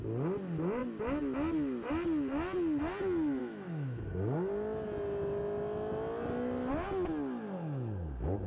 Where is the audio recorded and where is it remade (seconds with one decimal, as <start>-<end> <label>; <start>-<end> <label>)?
0.0-3.4 recorded; 3.4-4.0 remade; 4.0-8.5 recorded